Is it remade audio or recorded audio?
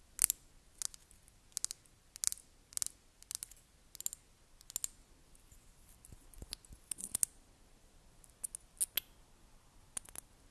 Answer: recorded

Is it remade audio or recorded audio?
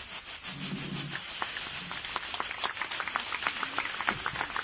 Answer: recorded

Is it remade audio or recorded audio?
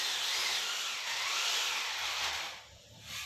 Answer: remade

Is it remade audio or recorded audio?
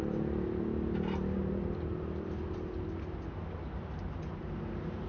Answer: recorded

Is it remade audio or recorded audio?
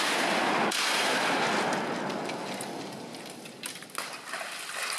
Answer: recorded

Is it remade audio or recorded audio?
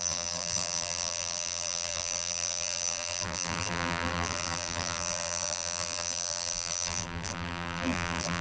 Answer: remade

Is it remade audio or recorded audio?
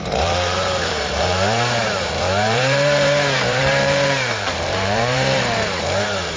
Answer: remade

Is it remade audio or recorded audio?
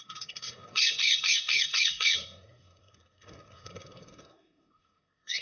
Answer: remade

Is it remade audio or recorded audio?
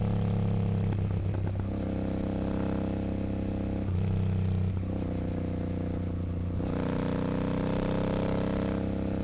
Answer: recorded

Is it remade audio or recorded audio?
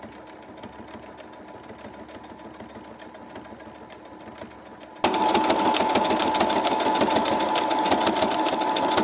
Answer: recorded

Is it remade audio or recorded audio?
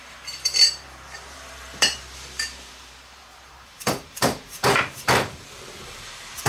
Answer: remade